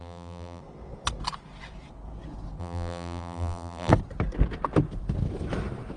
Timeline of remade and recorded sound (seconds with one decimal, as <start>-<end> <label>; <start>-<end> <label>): 0.0-0.6 remade; 0.6-2.6 recorded; 2.6-3.9 remade; 3.9-6.0 recorded

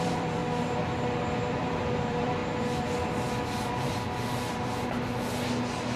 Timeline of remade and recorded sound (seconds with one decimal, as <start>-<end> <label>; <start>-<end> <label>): 0.0-0.4 remade; 0.4-1.4 recorded; 1.4-2.4 remade; 2.4-6.0 recorded

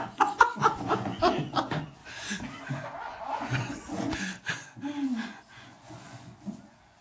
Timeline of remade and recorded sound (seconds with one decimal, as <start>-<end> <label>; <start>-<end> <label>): 0.0-2.0 remade; 2.0-2.7 recorded; 2.7-7.0 remade